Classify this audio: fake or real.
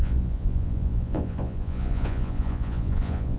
fake